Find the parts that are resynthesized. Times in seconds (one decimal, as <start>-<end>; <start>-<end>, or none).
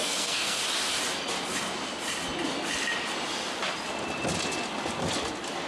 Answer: 0.0-0.6